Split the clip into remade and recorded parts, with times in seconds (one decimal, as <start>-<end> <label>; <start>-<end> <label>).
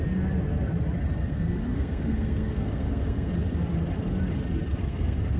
0.0-1.2 recorded; 1.2-3.3 remade; 3.3-4.8 recorded; 4.8-5.4 remade